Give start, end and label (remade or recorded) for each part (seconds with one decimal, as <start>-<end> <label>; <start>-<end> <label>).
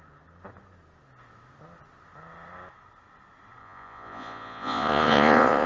0.0-3.6 recorded; 3.6-5.7 remade